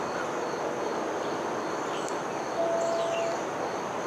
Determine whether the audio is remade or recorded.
recorded